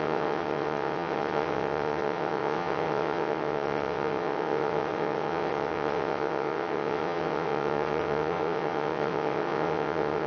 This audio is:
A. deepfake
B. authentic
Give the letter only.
A